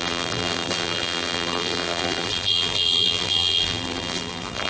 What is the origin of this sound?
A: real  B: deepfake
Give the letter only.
B